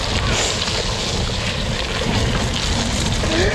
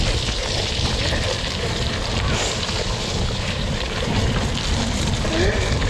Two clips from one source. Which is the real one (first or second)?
first